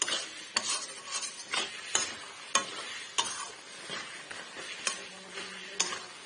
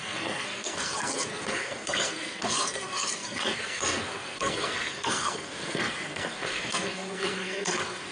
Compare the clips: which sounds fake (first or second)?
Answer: second